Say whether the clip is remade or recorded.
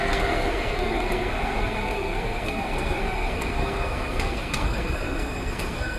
remade